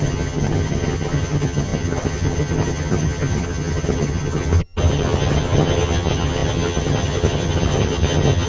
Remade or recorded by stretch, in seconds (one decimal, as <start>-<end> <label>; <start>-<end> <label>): 0.0-8.5 remade